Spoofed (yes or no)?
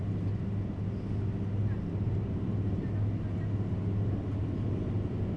no